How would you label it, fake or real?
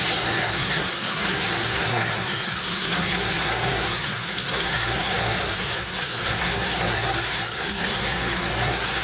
fake